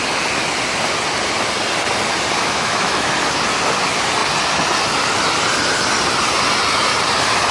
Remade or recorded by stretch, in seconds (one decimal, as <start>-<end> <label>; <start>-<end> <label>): 0.0-2.4 recorded; 2.4-3.1 remade; 3.1-7.5 recorded